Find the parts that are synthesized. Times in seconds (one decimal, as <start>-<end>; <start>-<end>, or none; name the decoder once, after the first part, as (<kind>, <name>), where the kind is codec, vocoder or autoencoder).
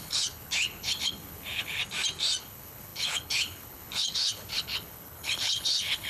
0.0-1.8 (codec, HILCodec); 2.4-6.1